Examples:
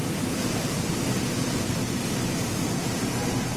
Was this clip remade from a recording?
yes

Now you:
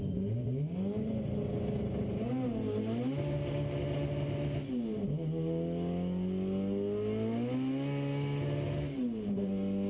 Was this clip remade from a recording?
no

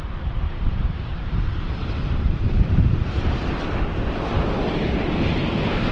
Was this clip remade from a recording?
yes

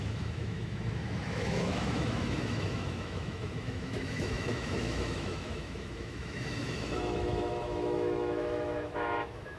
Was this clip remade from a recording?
yes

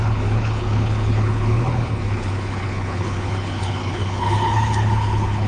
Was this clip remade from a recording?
yes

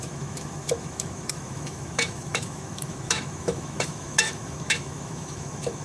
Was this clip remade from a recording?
yes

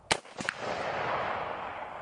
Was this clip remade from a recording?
no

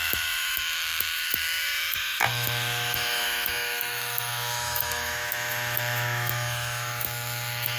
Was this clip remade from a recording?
yes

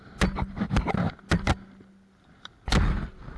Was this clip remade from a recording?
no